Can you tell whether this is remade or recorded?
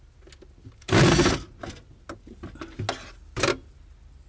recorded